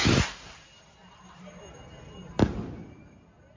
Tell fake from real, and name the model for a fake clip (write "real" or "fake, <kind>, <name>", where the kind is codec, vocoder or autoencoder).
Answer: real